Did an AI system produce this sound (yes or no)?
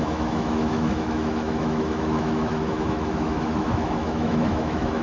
yes